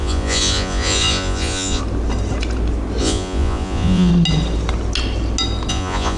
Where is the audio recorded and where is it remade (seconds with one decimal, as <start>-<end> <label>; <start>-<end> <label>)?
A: 0.0-1.8 remade; 1.8-3.0 recorded; 3.0-4.1 remade; 4.1-5.7 recorded; 5.7-6.2 remade